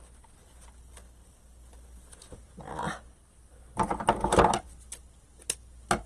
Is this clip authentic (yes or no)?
yes